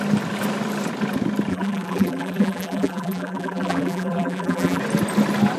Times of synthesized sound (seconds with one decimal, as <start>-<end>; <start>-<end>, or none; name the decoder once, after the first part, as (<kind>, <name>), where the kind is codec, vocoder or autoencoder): 1.5-4.8 (vocoder, BigVGAN v2)